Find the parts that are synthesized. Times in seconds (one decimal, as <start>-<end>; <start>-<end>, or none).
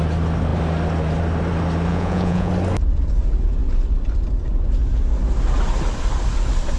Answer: 1.9-2.5